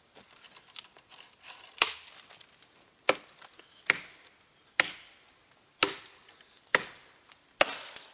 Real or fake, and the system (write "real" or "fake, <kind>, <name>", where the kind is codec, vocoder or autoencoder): real